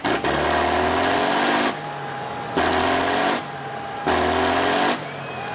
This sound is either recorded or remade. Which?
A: recorded